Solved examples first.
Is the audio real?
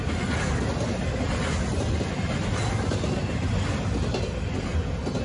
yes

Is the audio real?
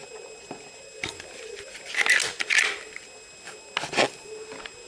yes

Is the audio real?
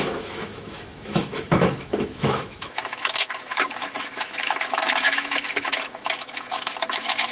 no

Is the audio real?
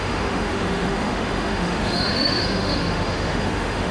no